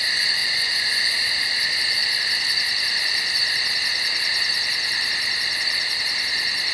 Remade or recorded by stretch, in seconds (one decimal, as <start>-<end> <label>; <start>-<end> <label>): 0.0-0.4 recorded; 0.4-1.2 remade; 1.2-6.7 recorded